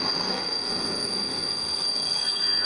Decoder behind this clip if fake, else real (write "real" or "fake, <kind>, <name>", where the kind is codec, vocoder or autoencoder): fake, codec, SNAC